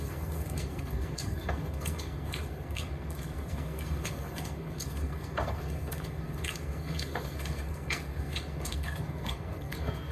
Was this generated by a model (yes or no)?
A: yes